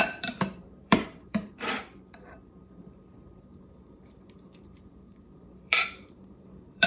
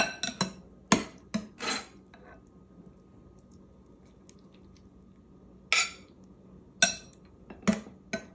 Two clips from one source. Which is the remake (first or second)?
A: first